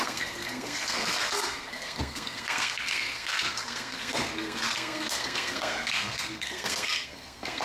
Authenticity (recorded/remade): remade